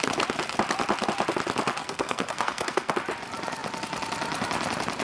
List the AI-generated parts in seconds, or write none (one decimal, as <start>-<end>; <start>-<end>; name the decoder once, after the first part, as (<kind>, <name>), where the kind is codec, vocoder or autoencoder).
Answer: 1.8-2.9 (codec, SNAC)